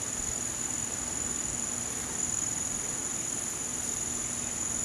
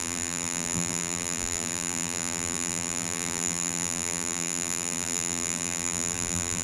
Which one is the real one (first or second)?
first